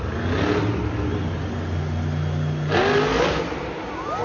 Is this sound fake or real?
real